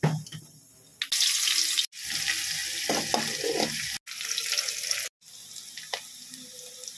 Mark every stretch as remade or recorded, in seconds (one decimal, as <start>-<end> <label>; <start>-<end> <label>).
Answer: 0.0-7.0 recorded